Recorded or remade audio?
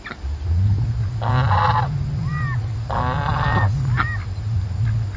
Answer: recorded